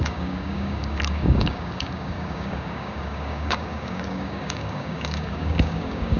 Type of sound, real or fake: fake